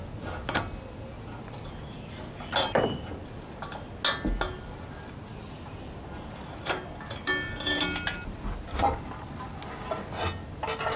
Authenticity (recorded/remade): recorded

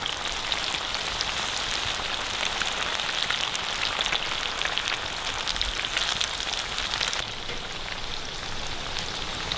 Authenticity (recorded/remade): recorded